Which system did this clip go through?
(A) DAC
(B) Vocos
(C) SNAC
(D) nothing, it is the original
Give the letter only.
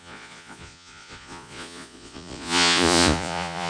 B